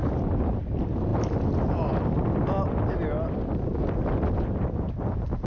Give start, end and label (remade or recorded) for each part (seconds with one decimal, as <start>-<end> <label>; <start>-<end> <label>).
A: 0.0-5.5 recorded